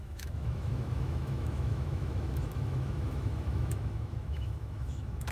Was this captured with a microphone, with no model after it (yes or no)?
no